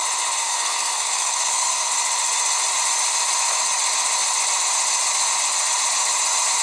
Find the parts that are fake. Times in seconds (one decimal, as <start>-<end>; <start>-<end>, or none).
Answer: 0.4-1.9